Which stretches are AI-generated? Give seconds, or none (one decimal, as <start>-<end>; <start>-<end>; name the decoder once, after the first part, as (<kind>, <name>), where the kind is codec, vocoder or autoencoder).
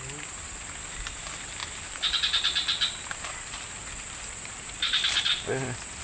1.6-5.2 (vocoder, BigVGAN v2)